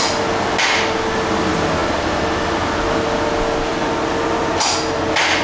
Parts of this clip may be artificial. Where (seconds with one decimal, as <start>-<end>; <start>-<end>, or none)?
none